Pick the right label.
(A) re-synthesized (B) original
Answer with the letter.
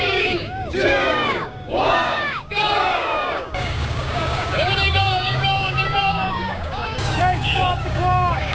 A